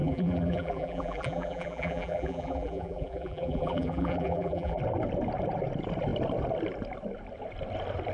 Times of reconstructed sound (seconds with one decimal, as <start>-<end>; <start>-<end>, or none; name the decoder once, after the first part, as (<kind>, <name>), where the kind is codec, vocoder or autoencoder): 0.0-4.8 (vocoder, BigVGAN v2)